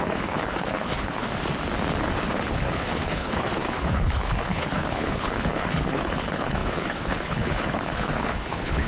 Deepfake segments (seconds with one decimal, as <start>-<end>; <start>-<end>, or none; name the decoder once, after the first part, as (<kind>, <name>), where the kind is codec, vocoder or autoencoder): 0.0-1.3 (codec, HILCodec); 2.5-8.9

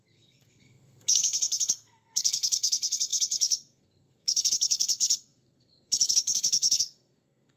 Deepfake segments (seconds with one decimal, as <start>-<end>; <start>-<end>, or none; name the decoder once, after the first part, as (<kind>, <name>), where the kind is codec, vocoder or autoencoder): 0.0-7.6 (codec, SNAC)